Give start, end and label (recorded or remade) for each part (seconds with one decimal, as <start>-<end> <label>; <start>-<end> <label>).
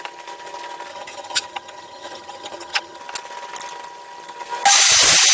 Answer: 0.0-0.9 recorded; 0.9-3.0 remade; 3.0-5.3 recorded